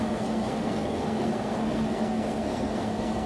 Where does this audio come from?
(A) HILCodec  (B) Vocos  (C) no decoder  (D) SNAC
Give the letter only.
D